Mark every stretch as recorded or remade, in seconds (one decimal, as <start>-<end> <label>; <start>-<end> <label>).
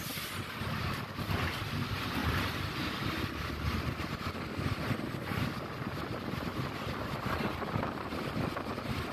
0.0-2.2 recorded; 2.2-2.8 remade; 2.8-9.1 recorded